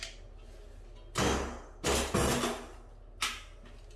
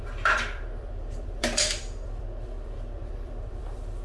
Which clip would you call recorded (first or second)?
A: first